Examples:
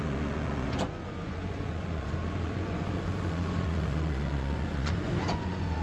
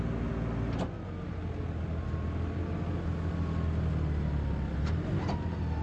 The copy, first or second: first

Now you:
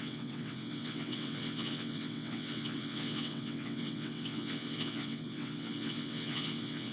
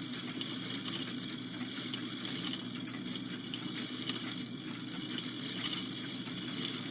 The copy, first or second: first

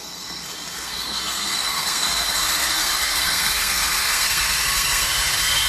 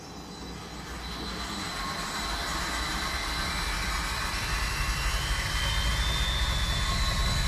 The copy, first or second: first